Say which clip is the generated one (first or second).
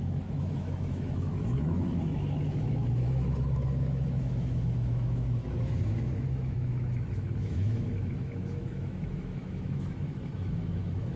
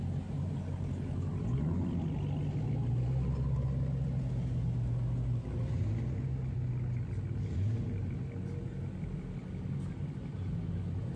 first